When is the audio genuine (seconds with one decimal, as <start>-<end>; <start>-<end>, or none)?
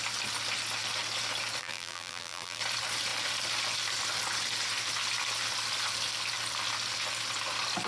0.0-1.6; 2.6-7.9